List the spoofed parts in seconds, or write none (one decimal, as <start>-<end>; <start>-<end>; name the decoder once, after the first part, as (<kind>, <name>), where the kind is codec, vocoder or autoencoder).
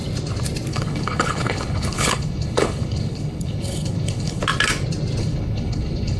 0.7-4.4 (codec, HILCodec); 5.2-6.2